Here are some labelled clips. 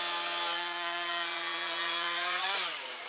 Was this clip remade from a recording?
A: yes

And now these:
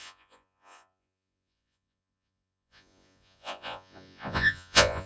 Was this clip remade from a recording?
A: yes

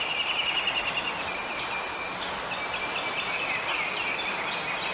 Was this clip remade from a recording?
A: no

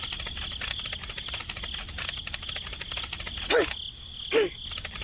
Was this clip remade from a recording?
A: no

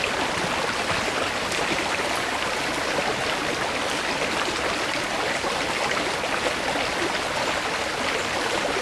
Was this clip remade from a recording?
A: no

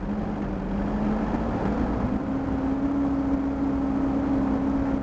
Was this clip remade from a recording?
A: no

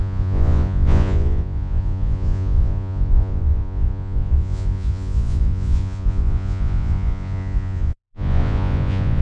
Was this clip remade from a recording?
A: yes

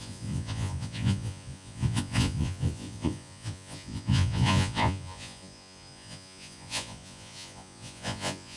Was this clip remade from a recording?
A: yes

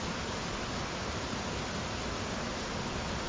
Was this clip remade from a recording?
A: no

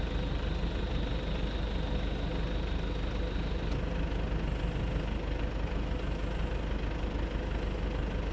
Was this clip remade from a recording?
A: no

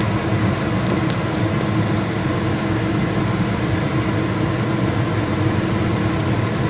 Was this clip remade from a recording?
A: no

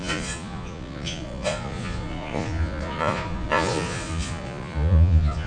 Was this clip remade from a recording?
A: yes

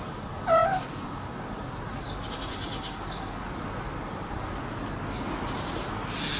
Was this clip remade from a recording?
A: no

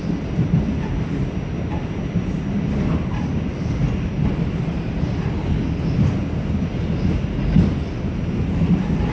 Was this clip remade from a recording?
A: no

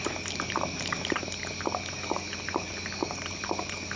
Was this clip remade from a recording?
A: no